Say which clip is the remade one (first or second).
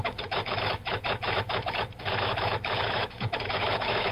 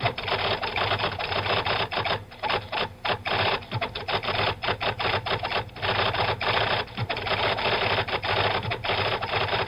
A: first